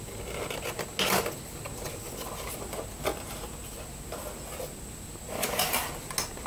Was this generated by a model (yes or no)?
no